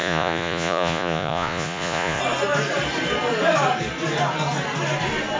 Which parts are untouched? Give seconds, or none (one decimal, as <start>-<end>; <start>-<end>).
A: 2.2-5.4